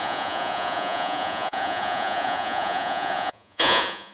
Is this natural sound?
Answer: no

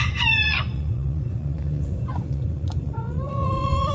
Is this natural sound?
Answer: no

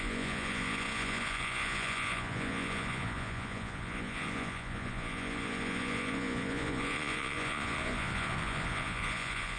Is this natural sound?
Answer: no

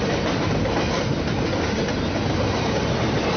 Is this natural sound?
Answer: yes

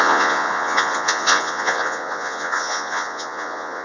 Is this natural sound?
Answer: no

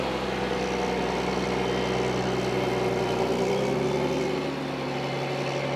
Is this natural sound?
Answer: yes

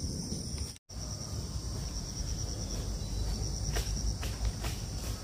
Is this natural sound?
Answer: yes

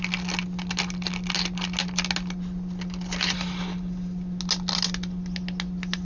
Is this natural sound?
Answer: yes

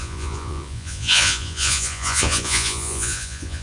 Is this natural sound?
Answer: no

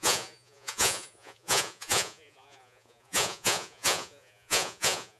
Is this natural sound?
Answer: no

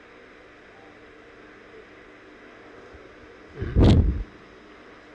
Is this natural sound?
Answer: yes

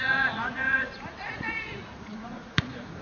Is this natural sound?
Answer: no